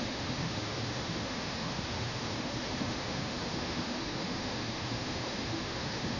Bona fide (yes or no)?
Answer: no